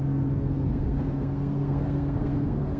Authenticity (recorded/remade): remade